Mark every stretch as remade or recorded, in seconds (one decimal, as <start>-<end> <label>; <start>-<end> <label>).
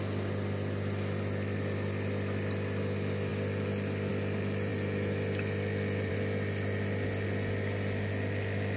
0.0-4.7 recorded; 4.7-6.1 remade; 6.1-8.8 recorded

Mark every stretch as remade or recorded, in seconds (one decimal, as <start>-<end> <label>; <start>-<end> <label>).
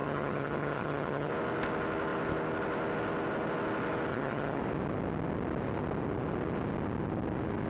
0.0-1.3 remade; 1.3-4.1 recorded; 4.1-4.6 remade; 4.6-7.7 recorded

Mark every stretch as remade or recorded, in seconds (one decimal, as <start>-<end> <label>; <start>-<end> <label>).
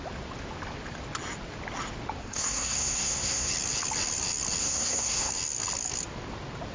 0.0-2.2 recorded; 2.2-3.5 remade; 3.5-4.6 recorded; 4.6-5.3 remade; 5.3-6.7 recorded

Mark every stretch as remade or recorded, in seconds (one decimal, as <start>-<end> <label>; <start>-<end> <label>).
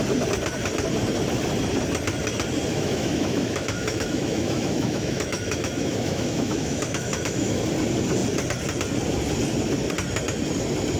0.0-2.7 recorded; 2.7-7.6 remade; 7.6-11.0 recorded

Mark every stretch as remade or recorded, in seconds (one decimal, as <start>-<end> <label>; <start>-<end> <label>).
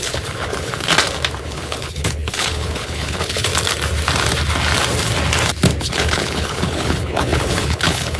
0.0-0.9 remade; 0.9-1.4 recorded; 1.4-3.5 remade; 3.5-5.8 recorded; 5.8-8.2 remade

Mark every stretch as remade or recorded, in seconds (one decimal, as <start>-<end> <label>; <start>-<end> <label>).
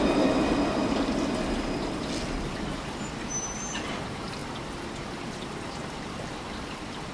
0.0-7.1 recorded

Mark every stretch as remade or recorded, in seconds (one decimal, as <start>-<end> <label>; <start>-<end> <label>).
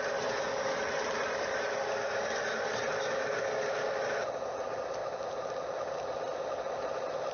0.0-7.3 recorded